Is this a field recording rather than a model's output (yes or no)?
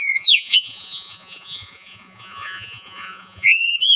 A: no